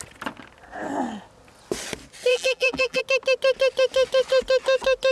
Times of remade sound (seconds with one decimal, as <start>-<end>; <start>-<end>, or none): 2.3-3.0